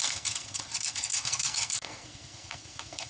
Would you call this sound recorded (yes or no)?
no